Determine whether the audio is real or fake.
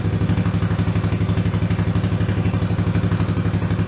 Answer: real